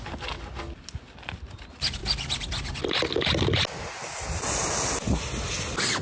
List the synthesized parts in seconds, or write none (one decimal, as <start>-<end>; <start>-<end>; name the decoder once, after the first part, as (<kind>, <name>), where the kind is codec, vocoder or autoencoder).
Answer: none